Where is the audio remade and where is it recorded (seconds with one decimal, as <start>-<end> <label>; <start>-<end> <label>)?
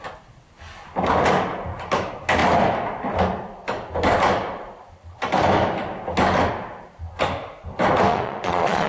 0.0-8.1 recorded; 8.1-8.9 remade